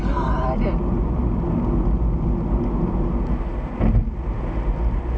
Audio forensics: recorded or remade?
recorded